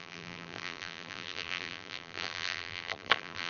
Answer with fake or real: fake